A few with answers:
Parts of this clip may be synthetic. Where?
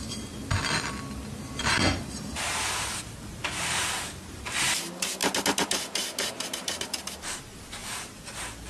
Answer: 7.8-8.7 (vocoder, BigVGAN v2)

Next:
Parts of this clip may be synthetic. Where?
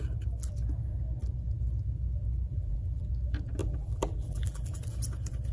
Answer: 2.5-3.1 (vocoder, BigVGAN v2); 3.6-4.8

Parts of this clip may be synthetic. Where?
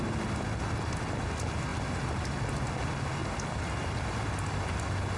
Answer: none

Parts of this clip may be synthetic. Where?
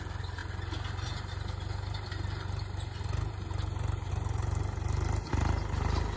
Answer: none